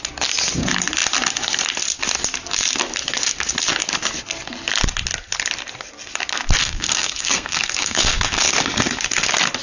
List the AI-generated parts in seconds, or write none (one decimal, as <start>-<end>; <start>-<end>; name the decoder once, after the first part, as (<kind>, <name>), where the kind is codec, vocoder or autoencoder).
6.6-8.5 (codec, SNAC)